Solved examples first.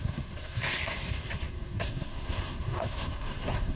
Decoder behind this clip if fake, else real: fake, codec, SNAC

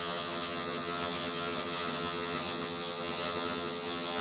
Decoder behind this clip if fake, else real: fake, vocoder, HiFi-GAN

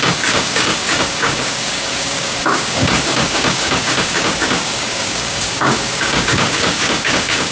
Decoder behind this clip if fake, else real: fake, codec, DAC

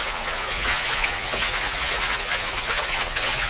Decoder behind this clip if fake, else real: fake, vocoder, Vocos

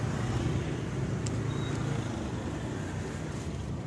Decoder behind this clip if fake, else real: real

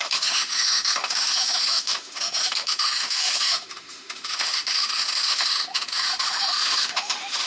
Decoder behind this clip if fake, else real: fake, autoencoder, DAC-VAE